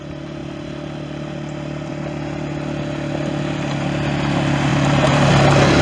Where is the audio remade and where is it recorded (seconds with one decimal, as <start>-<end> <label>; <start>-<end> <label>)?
0.0-0.4 recorded; 0.4-1.9 remade; 1.9-4.7 recorded; 4.7-5.3 remade; 5.3-5.8 recorded